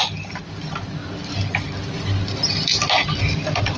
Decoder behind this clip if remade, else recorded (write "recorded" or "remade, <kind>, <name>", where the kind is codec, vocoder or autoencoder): recorded